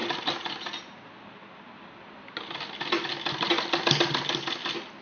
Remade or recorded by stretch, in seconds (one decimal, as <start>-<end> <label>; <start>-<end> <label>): 0.0-5.0 recorded